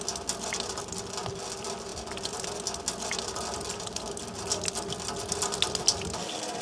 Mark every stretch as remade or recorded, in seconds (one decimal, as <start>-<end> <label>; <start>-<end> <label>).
0.0-6.6 recorded